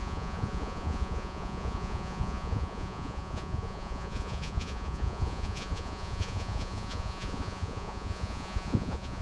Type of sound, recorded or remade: remade